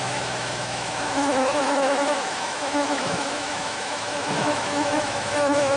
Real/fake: fake